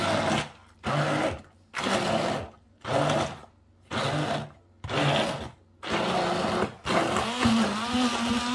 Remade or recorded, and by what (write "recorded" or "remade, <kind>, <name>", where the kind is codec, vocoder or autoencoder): recorded